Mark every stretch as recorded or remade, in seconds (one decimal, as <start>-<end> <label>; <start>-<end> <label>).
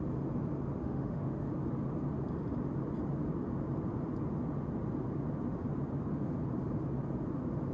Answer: 0.0-0.8 recorded; 0.8-1.5 remade; 1.5-7.7 recorded